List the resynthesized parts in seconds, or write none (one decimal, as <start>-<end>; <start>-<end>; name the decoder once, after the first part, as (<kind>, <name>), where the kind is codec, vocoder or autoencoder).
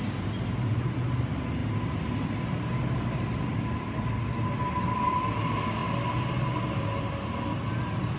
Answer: none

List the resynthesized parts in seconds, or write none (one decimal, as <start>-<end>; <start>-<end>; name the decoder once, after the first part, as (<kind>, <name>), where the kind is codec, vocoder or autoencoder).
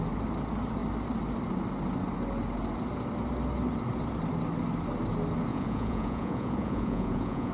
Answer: 5.5-7.5 (vocoder, Vocos)